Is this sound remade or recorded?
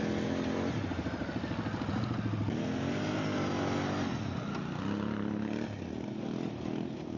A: recorded